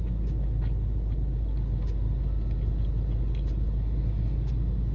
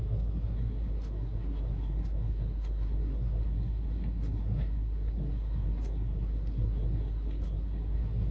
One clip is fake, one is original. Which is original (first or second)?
first